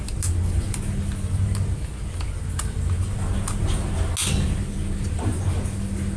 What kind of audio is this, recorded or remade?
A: recorded